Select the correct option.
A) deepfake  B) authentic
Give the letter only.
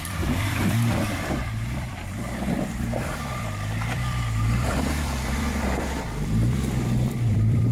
A